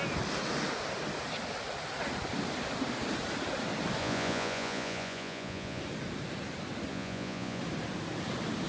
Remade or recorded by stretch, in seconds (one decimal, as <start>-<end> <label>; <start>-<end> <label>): 0.0-4.0 recorded; 4.0-5.8 remade; 5.8-6.9 recorded; 6.9-7.6 remade; 7.6-8.7 recorded

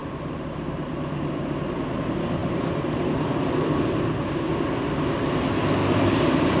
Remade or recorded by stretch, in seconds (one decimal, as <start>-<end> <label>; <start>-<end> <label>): 0.0-2.4 recorded; 2.4-4.5 remade; 4.5-5.8 recorded; 5.8-6.6 remade